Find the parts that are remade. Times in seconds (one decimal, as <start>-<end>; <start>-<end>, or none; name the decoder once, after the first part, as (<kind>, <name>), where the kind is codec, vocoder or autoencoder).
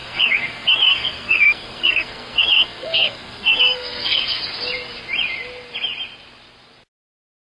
0.0-4.4 (codec, SNAC)